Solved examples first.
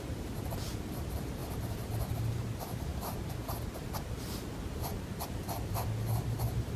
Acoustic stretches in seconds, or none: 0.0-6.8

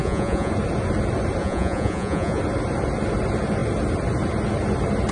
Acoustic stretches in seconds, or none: 0.5-1.4; 2.4-5.1

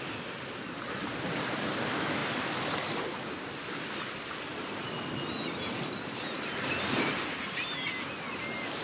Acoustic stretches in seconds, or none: 0.0-8.8

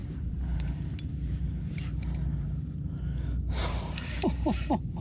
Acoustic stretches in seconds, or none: 3.0-3.6

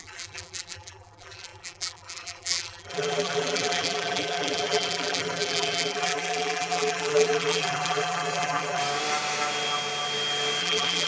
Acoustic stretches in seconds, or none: 8.8-10.6

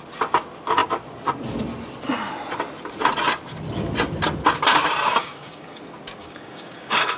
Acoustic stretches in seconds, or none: 0.0-5.1; 5.8-6.2

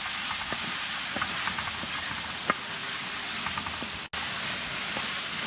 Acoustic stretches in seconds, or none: 0.0-5.5

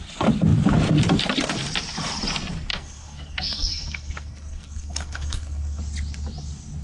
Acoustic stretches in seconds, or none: 0.0-2.7; 5.8-6.8